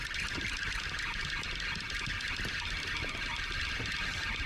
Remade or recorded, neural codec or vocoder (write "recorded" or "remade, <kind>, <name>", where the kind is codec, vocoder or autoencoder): recorded